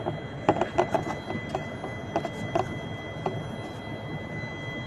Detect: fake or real real